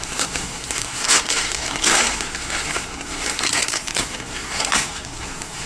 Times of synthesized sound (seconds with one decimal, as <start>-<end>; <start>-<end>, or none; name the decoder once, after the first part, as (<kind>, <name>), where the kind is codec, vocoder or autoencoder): 0.0-5.7 (codec, SNAC)